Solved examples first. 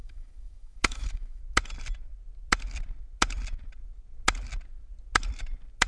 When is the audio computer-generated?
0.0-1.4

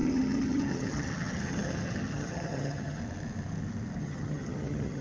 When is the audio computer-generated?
0.0-3.0; 4.0-5.0

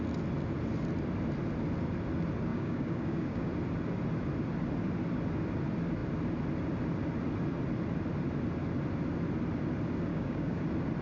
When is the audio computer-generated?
2.5-3.5; 10.1-10.6

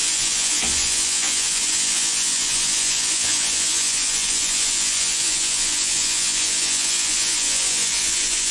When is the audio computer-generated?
0.0-8.5

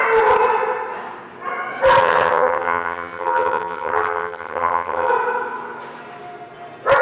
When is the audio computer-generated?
2.0-5.1

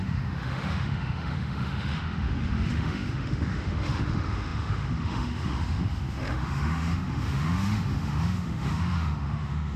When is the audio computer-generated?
0.0-9.8